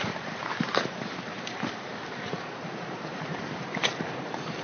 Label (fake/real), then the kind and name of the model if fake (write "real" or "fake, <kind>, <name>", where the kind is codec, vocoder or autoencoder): fake, vocoder, BigVGAN v2